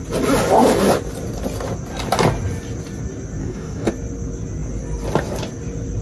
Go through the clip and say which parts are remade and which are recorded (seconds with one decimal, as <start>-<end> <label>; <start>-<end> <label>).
0.0-3.4 recorded; 3.4-3.9 remade; 3.9-6.0 recorded